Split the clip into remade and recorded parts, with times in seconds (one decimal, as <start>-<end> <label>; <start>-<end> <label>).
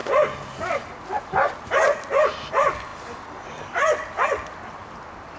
0.0-5.4 recorded